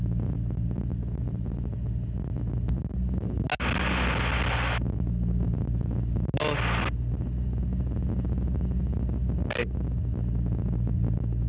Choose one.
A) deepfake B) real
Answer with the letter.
B